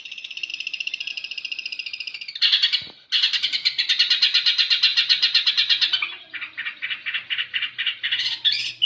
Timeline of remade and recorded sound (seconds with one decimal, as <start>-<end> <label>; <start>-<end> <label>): 0.0-8.8 recorded